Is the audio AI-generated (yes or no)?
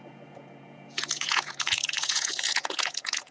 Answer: yes